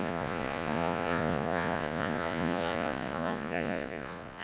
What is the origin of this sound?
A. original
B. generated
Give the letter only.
B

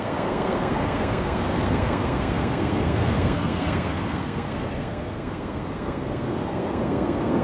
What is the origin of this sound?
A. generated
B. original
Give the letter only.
A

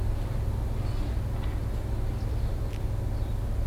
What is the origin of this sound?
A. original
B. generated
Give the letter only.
A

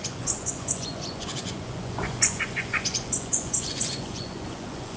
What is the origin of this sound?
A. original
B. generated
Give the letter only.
B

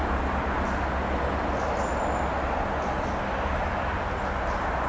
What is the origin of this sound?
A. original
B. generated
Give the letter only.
A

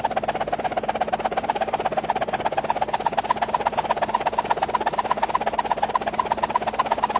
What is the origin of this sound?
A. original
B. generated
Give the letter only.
A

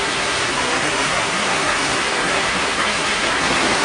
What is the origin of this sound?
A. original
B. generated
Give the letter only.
B